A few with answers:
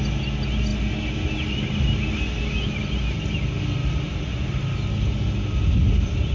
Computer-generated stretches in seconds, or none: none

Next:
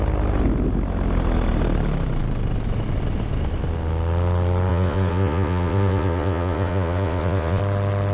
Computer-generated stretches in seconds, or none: 4.7-7.6 (vocoder, Vocos)